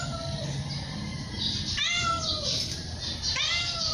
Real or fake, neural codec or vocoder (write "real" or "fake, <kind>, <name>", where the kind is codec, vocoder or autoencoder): real